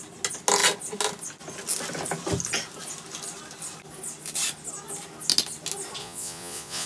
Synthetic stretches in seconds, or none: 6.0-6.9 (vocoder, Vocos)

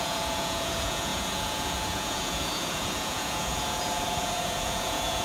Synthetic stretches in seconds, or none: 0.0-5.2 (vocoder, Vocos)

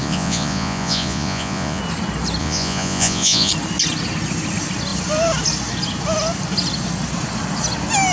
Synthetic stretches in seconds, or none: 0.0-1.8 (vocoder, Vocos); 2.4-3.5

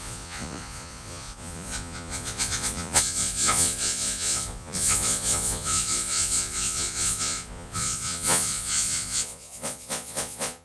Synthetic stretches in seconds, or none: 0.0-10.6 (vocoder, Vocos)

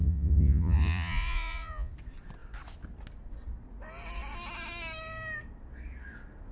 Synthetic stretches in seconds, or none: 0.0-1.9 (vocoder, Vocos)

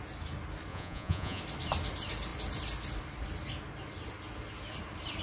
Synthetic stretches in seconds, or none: 0.7-1.4 (vocoder, Vocos)